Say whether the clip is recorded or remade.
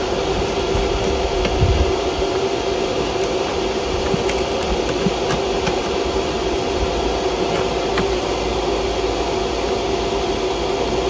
recorded